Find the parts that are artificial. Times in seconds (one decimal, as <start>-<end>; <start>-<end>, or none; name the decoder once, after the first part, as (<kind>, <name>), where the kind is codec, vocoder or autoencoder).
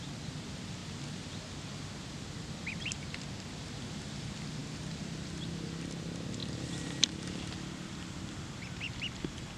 6.4-7.1 (vocoder, BigVGAN v2)